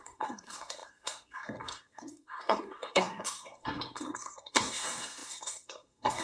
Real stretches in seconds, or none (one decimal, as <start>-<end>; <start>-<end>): none